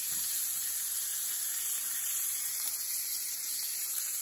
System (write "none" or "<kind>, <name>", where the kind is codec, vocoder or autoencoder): vocoder, BigVGAN v2